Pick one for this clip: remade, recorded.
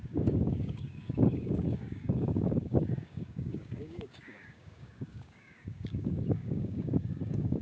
remade